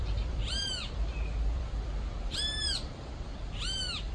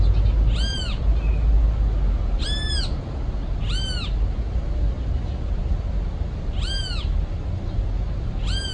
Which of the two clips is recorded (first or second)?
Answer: second